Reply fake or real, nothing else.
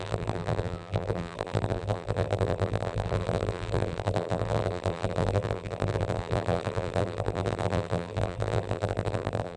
fake